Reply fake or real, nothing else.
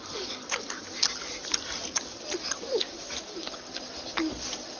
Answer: real